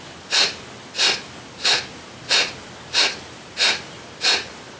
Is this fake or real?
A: real